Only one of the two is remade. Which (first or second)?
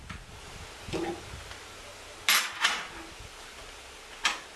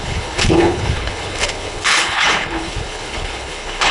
second